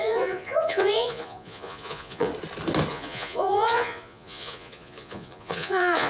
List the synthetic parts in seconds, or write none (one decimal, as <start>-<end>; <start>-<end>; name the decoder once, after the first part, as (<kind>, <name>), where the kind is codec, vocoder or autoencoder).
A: 0.0-2.3 (vocoder, Vocos); 2.9-6.1